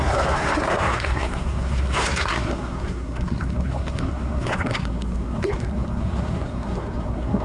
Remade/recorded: remade